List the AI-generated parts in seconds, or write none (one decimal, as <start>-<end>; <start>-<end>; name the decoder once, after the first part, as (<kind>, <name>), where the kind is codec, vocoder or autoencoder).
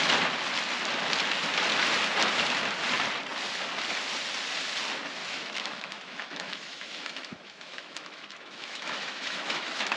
5.2-10.0 (autoencoder, DAC-VAE)